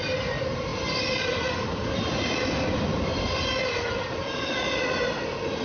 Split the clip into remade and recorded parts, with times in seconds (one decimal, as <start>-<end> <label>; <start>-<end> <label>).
0.0-5.6 recorded